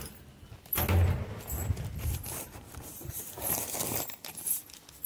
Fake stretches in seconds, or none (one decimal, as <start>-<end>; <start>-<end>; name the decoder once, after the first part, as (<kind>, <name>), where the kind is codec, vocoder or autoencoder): 1.6-3.5 (vocoder, BigVGAN v2)